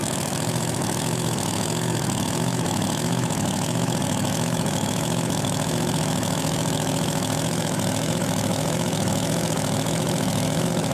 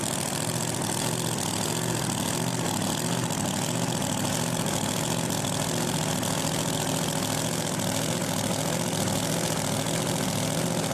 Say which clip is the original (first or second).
second